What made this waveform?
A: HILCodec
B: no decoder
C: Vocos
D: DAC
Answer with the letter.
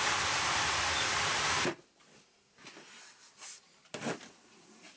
B